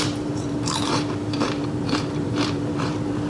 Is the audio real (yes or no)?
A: no